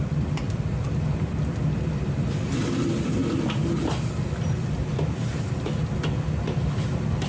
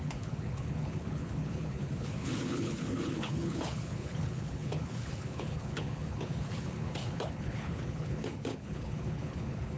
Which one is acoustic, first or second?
first